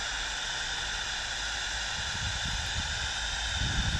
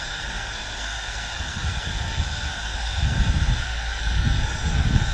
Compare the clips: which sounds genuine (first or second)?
first